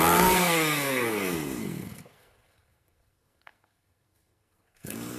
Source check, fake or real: fake